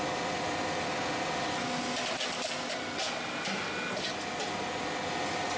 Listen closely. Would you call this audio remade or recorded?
recorded